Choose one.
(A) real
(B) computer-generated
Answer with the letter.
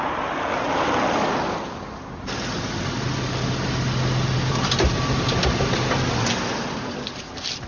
A